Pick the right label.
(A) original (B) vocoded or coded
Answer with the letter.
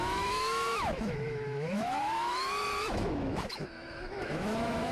B